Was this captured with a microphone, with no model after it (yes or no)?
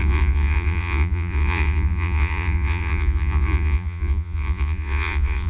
no